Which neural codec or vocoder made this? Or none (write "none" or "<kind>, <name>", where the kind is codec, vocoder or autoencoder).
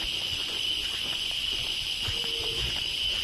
vocoder, Vocos